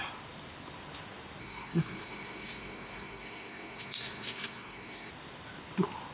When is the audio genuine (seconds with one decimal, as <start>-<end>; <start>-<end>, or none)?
0.0-1.4; 5.1-6.1